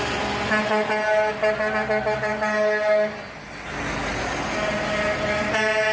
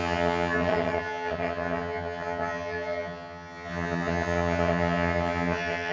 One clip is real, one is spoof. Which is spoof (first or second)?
second